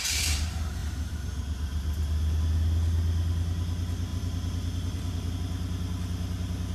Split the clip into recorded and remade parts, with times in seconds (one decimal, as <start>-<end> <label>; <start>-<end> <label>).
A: 0.0-0.8 recorded; 0.8-1.4 remade; 1.4-4.1 recorded; 4.1-5.3 remade; 5.3-6.7 recorded